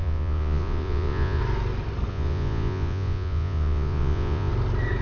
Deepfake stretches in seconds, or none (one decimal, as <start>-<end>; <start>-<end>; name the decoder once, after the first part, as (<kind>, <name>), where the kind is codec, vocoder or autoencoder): 0.0-1.4 (vocoder, Vocos); 2.1-4.5